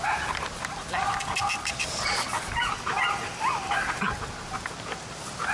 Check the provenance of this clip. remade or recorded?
recorded